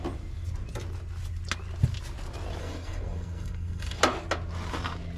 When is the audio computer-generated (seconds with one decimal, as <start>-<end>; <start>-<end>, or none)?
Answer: 2.6-4.0